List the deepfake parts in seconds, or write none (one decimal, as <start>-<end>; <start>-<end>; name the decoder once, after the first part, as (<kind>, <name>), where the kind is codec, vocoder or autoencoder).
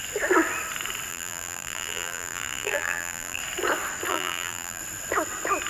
1.1-3.4 (vocoder, BigVGAN v2); 4.1-4.8